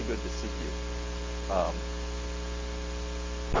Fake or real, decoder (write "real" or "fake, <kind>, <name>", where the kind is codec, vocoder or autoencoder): real